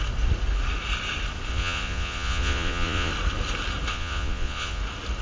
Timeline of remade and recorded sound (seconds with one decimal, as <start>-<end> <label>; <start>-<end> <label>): 0.0-1.5 recorded; 1.5-3.1 remade; 3.1-3.9 recorded; 3.9-4.8 remade; 4.8-5.2 recorded